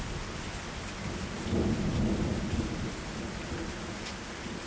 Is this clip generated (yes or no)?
no